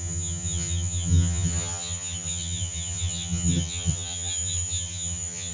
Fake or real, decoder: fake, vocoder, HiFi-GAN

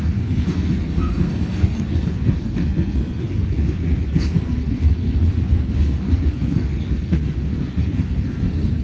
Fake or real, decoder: fake, codec, SNAC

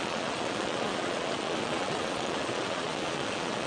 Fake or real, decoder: fake, vocoder, Vocos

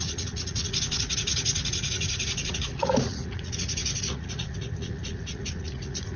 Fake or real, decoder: fake, vocoder, Vocos